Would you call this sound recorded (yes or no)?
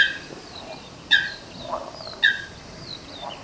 yes